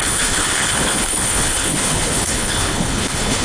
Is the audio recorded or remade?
remade